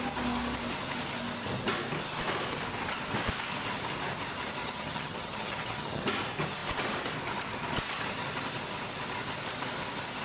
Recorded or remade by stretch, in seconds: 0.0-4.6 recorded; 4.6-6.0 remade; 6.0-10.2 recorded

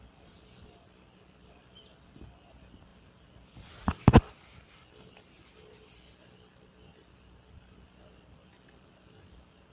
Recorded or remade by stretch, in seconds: 0.0-2.9 recorded; 2.9-5.1 remade; 5.1-9.7 recorded

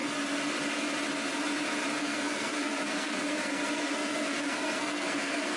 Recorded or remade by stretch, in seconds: 0.0-2.0 recorded; 2.0-5.6 remade

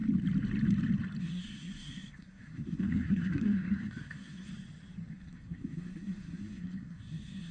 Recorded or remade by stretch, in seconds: 0.0-1.2 recorded; 1.2-4.5 remade; 4.5-5.1 recorded; 5.1-7.5 remade

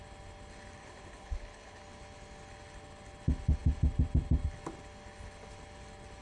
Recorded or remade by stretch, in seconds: 0.0-0.8 recorded; 0.8-1.8 remade; 1.8-6.2 recorded

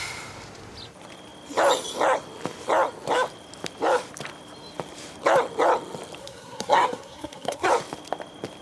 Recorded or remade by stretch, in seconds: 0.0-6.2 recorded; 6.2-7.7 remade; 7.7-8.6 recorded

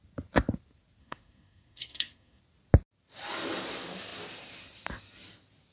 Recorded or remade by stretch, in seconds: 0.0-1.0 recorded; 1.0-2.4 remade; 2.4-5.7 recorded